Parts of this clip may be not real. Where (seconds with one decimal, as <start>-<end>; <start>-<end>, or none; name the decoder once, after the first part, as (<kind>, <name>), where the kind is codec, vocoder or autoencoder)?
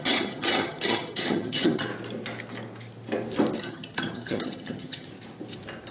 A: 0.0-1.9 (vocoder, HiFi-GAN); 3.6-5.1